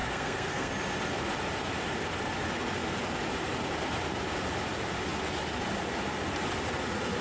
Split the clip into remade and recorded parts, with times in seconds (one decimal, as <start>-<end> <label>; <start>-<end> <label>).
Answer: 0.0-0.7 remade; 0.7-7.2 recorded